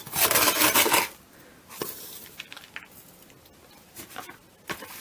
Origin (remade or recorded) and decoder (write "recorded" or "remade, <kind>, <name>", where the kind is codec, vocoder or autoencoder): recorded